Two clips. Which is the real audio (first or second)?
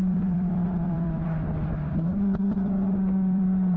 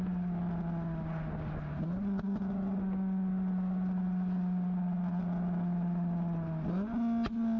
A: second